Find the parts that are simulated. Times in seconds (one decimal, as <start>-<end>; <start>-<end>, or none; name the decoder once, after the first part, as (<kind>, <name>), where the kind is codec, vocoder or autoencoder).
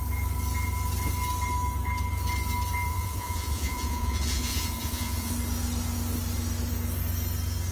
2.9-5.3 (vocoder, Vocos)